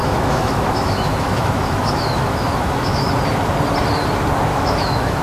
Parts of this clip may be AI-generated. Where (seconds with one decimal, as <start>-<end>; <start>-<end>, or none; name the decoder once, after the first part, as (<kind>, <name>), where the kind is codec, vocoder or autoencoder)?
0.0-3.1 (autoencoder, DAC-VAE); 4.5-5.2